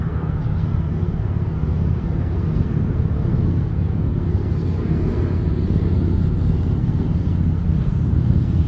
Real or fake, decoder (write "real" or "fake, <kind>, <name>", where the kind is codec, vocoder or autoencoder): fake, codec, SNAC